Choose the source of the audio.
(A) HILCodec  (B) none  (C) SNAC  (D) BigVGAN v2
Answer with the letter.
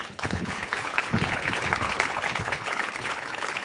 A